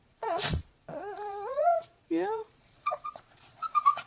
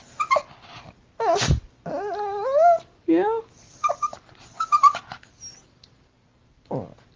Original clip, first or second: second